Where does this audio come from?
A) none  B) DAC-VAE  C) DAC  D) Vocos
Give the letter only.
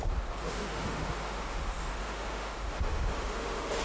B